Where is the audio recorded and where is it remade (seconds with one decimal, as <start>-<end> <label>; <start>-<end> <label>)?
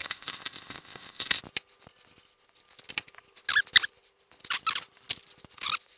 0.0-1.4 remade; 1.4-6.0 recorded